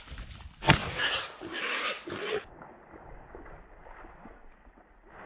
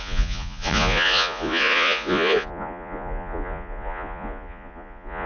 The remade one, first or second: second